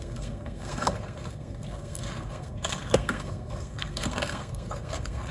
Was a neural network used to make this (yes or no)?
yes